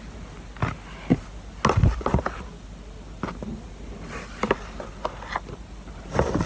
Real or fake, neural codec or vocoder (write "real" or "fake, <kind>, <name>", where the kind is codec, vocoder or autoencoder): real